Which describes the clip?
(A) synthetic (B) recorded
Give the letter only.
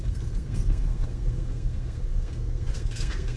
A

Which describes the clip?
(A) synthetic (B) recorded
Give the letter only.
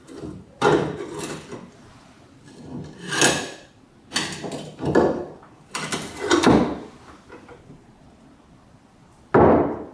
B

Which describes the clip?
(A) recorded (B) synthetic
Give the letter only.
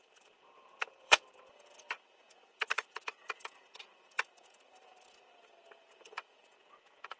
B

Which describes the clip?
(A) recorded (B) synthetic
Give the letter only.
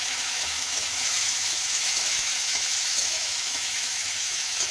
B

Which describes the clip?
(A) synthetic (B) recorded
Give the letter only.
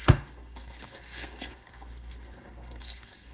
A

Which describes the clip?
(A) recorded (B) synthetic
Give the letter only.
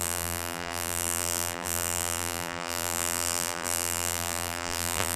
B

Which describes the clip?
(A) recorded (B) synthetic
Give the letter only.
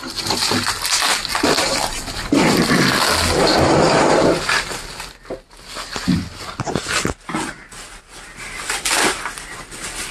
A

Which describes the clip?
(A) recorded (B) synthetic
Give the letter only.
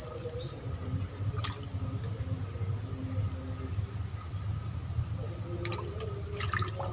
A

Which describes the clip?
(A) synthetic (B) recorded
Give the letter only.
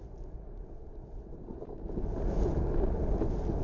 B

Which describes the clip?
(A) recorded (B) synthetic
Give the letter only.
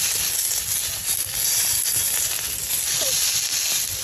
A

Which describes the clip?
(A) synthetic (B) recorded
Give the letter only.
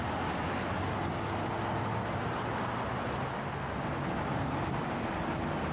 B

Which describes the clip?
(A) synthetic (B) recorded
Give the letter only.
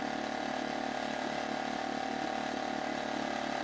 B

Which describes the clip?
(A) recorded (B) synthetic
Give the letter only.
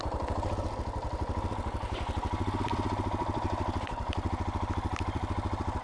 B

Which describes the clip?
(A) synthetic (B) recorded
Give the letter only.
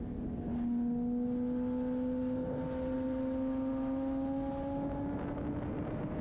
B